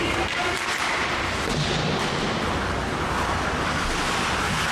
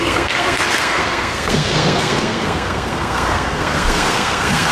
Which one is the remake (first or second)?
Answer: second